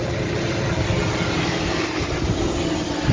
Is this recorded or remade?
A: recorded